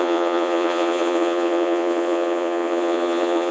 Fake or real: fake